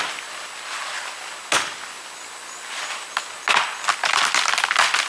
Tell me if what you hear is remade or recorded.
recorded